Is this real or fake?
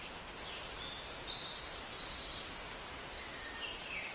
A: real